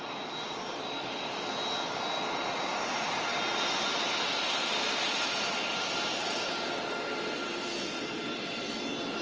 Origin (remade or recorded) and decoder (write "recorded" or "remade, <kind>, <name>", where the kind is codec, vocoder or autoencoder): recorded